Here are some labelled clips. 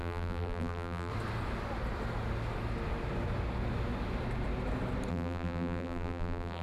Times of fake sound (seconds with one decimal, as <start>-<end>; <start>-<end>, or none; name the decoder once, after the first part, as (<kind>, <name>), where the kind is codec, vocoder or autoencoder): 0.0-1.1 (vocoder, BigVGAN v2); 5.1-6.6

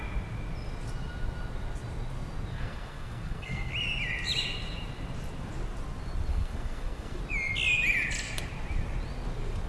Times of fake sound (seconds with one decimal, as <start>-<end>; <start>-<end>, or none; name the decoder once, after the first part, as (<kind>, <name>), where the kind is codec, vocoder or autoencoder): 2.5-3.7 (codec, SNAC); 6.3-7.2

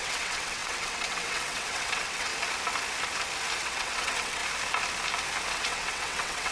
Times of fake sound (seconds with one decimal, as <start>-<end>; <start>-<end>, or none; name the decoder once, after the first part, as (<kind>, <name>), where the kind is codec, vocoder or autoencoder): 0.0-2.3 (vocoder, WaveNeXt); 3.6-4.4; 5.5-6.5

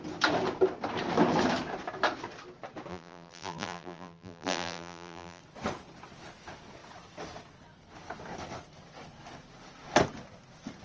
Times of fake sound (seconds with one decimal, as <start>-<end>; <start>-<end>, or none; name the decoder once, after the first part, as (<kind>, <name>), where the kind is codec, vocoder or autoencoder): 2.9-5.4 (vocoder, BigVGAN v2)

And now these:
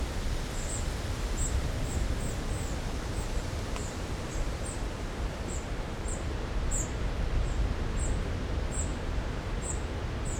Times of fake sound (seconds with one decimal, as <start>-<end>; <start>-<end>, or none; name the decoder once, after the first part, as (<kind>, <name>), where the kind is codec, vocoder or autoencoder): 3.8-7.1 (vocoder, BigVGAN v2); 8.9-9.7

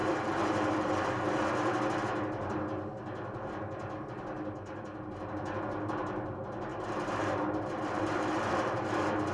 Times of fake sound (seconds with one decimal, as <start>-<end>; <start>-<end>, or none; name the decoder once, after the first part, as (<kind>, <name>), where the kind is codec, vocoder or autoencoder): 0.0-1.1 (vocoder, BigVGAN v2); 6.7-8.9